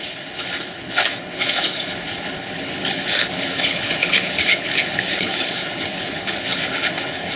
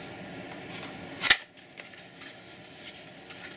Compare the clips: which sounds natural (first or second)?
second